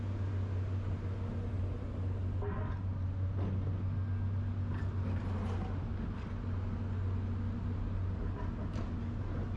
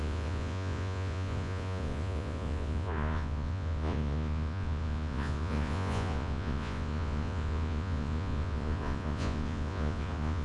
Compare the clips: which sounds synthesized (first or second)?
second